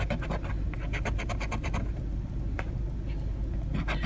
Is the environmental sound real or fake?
real